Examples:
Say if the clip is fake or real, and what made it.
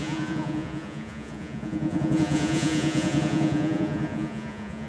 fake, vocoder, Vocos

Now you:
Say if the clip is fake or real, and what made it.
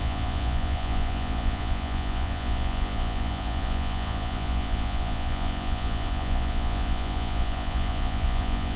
fake, vocoder, Vocos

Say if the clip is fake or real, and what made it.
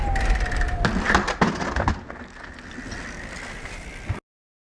real